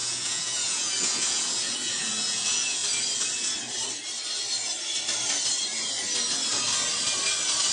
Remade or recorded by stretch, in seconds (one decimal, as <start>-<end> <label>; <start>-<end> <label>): 0.0-2.8 remade; 2.8-7.7 recorded

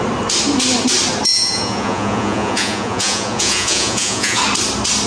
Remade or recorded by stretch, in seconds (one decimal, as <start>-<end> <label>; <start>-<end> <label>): 0.0-1.3 recorded; 1.3-4.4 remade; 4.4-5.1 recorded

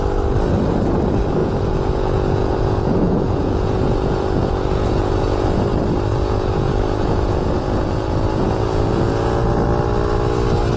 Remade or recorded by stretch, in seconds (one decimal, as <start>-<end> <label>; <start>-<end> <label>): 0.0-1.4 recorded; 1.4-5.6 remade; 5.6-6.1 recorded; 6.1-9.5 remade; 9.5-10.8 recorded

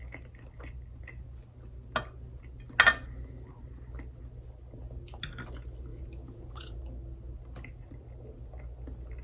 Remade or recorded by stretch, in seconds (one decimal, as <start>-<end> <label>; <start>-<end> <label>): 0.0-5.9 recorded; 5.9-6.8 remade; 6.8-9.2 recorded

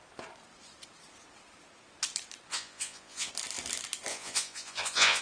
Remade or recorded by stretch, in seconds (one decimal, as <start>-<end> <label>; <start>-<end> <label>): 0.0-2.5 recorded; 2.5-3.3 remade; 3.3-4.1 recorded; 4.1-5.2 remade

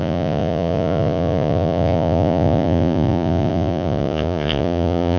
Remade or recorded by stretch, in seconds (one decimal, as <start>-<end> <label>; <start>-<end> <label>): 0.0-5.2 remade

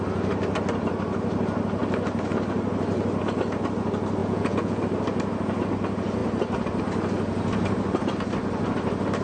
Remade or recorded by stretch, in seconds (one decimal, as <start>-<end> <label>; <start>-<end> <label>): 0.0-4.2 recorded; 4.2-4.8 remade; 4.8-9.2 recorded